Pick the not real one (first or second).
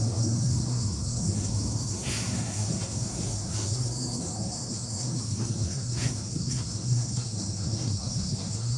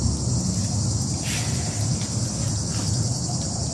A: first